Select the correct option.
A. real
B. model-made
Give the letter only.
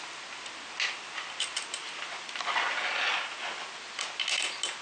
A